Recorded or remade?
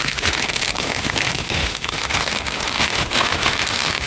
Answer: remade